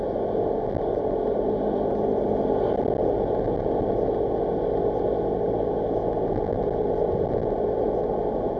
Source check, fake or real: real